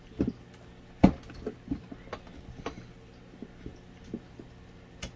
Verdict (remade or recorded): recorded